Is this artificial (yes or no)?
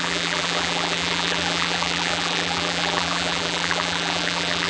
yes